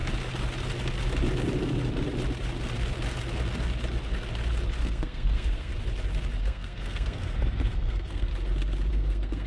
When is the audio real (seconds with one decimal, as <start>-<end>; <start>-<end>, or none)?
0.0-4.8; 5.7-6.4; 8.3-8.9